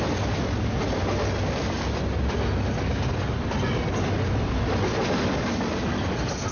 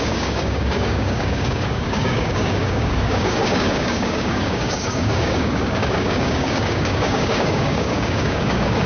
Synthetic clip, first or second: second